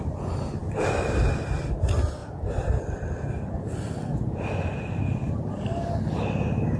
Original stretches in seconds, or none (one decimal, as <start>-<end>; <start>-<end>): 0.0-2.2; 2.8-6.8